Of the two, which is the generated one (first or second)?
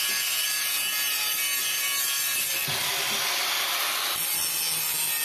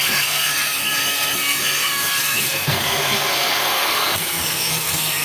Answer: second